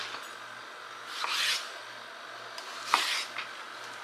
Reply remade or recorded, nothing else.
recorded